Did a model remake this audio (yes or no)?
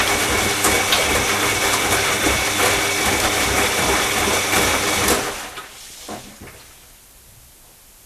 no